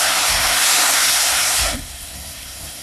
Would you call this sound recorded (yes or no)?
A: no